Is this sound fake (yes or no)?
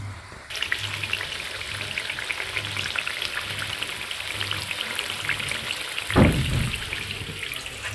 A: no